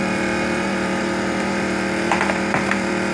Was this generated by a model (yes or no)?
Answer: yes